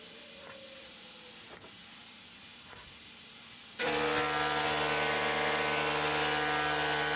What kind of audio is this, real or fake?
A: real